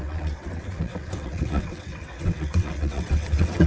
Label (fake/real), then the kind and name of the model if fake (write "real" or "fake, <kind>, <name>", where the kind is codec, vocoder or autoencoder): fake, vocoder, WaveNeXt